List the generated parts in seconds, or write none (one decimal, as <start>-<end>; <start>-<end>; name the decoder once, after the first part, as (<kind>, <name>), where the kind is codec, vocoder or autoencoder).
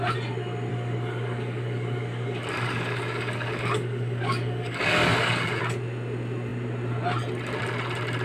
0.7-5.6 (codec, DAC)